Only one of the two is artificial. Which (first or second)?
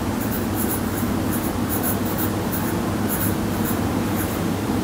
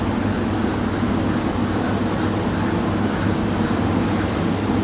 first